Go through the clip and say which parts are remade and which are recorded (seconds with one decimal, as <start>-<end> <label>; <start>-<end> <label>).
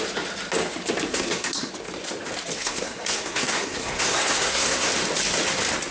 0.0-1.1 recorded; 1.1-1.7 remade; 1.7-2.6 recorded; 2.6-4.9 remade; 4.9-5.9 recorded